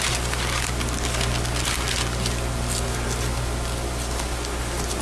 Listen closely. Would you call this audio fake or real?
real